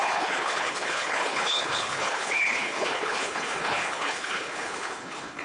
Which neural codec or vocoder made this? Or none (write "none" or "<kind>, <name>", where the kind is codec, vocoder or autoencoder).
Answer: codec, HILCodec